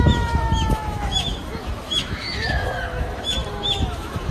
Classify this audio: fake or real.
fake